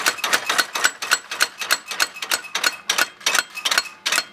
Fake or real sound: real